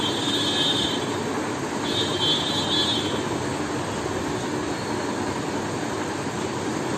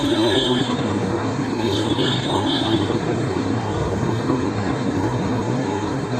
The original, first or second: first